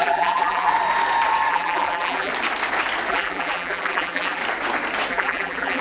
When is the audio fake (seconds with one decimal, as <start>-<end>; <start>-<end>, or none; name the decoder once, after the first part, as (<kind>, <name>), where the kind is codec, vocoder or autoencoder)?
0.0-0.7 (vocoder, BigVGAN v2); 1.5-2.3; 3.1-4.4; 5.1-5.8